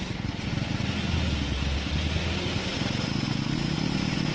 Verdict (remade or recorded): recorded